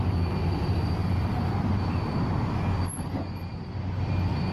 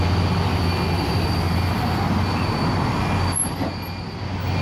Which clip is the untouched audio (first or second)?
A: second